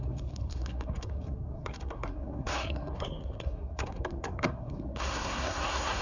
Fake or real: fake